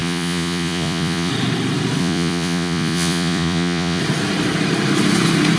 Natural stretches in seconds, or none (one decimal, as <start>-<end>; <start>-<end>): 1.3-2.0; 4.0-5.6